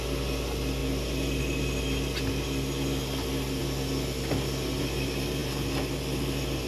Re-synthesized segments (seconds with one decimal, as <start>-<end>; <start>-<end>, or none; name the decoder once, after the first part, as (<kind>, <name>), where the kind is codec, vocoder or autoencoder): none